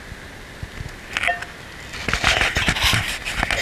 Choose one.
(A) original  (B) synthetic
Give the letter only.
A